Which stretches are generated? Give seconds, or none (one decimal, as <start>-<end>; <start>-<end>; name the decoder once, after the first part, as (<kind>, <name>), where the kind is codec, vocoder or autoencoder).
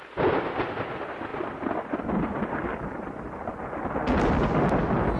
none